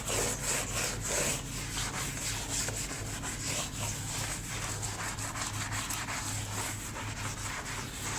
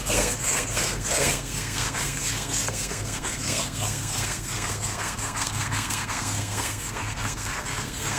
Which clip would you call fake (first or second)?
second